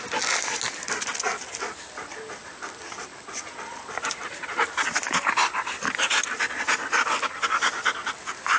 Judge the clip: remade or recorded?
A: recorded